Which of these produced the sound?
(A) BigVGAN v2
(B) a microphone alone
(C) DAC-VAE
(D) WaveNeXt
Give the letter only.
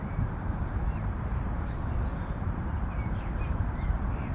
A